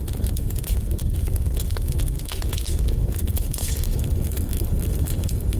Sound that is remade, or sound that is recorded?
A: remade